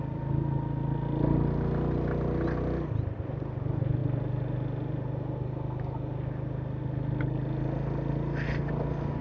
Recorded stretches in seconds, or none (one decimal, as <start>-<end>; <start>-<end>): 0.0-9.2

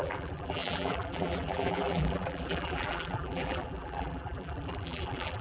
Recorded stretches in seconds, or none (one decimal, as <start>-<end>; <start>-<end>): none

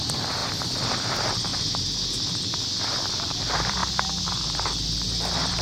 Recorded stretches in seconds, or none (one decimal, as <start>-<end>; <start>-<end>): 0.4-0.9; 1.5-3.1; 3.8-4.4

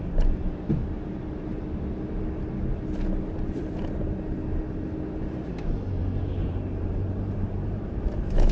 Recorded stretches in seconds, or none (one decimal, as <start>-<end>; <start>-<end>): 0.0-6.4; 8.0-8.5